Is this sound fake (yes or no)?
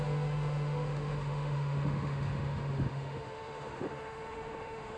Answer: yes